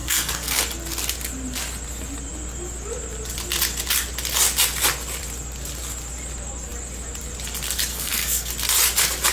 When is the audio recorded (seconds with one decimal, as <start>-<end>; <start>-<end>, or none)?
0.6-7.9; 8.5-9.3